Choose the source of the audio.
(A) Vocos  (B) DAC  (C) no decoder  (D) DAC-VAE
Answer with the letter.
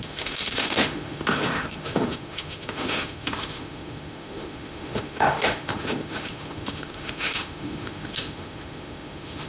D